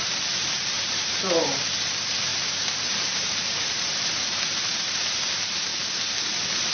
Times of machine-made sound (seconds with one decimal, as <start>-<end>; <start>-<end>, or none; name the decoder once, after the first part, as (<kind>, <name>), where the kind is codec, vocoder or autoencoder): 0.0-5.7 (vocoder, BigVGAN v2)